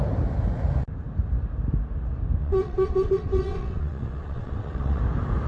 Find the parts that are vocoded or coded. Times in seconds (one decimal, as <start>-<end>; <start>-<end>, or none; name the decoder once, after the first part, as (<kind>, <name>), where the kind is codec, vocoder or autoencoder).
2.4-5.0 (vocoder, WaveNeXt)